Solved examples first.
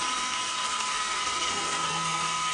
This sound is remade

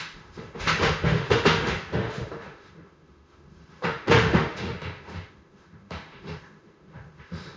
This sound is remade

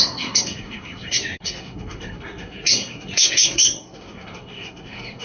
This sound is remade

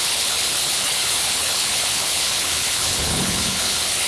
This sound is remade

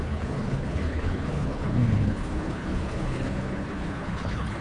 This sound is remade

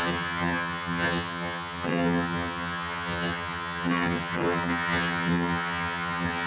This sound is remade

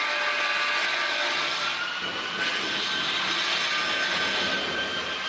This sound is recorded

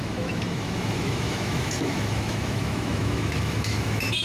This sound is remade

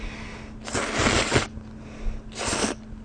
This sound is recorded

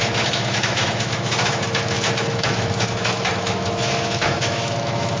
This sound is remade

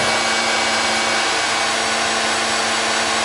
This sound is recorded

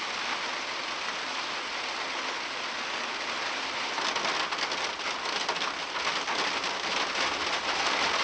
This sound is recorded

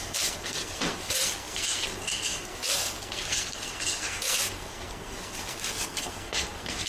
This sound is remade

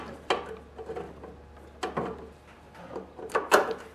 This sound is recorded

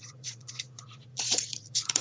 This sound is remade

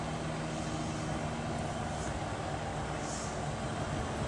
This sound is recorded